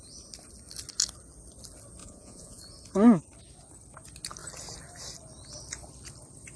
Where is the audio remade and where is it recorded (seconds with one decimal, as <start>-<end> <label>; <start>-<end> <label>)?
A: 0.0-2.0 recorded; 2.0-2.6 remade; 2.6-6.6 recorded